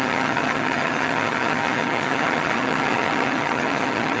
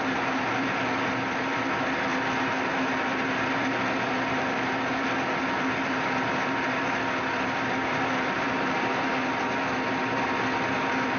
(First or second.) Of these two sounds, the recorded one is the second